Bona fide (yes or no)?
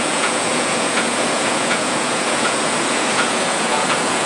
no